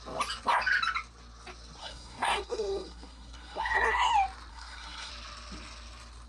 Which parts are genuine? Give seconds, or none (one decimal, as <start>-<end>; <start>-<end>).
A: 0.0-1.8; 4.1-4.5; 5.1-6.3

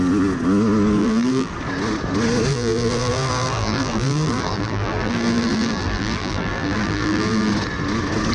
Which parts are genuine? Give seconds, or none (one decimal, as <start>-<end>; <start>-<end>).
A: 0.0-1.0; 1.5-2.5; 7.5-8.3

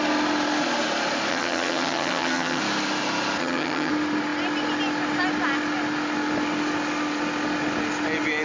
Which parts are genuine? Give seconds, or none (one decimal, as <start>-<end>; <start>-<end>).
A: 0.0-1.3; 2.6-3.4; 3.9-8.4

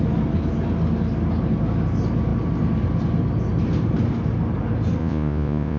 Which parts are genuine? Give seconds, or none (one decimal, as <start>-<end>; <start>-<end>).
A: 0.0-5.0

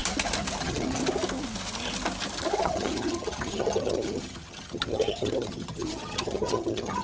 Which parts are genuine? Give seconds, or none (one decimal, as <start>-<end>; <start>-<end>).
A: 0.0-0.6; 1.0-2.6

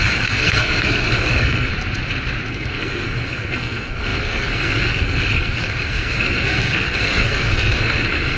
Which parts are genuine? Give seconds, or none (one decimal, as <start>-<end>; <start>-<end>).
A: 1.7-2.5